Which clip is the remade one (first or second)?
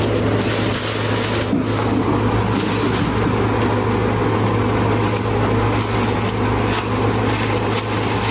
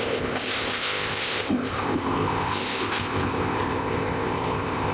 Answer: second